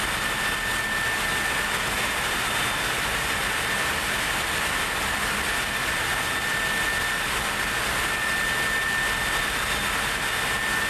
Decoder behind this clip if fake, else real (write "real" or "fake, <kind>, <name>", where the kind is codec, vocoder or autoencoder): real